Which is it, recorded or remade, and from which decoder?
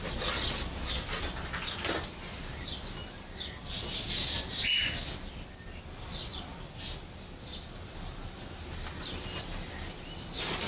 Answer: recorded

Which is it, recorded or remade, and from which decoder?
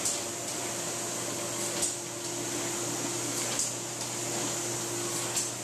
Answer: recorded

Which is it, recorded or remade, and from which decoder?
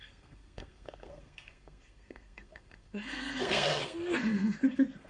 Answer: remade, codec, SNAC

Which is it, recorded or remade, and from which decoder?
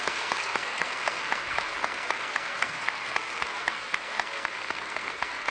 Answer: remade, codec, SNAC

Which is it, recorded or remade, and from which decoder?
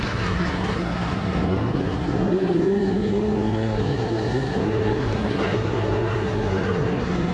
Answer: remade, codec, SNAC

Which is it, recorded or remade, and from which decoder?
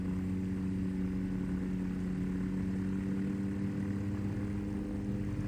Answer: recorded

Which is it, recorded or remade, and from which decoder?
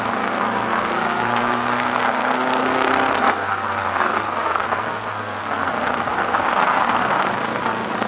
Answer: remade, codec, SNAC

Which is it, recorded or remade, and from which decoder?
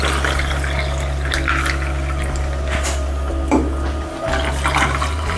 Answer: recorded